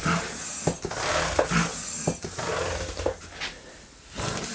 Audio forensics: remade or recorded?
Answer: recorded